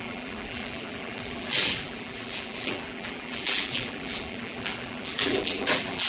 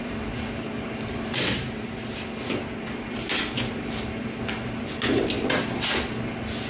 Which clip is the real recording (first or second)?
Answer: second